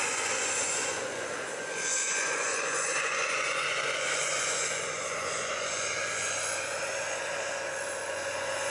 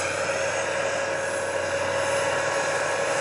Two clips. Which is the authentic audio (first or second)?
second